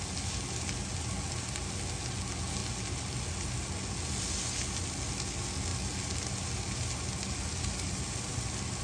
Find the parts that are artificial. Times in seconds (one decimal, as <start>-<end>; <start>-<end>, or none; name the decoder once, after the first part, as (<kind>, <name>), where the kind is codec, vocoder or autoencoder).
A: none